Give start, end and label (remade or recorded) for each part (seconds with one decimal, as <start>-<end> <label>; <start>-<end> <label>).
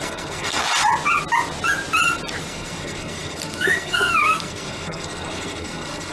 0.0-0.6 remade; 0.6-2.4 recorded; 2.4-6.1 remade